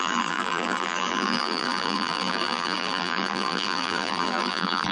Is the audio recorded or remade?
remade